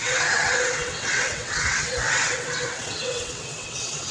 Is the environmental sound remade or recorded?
remade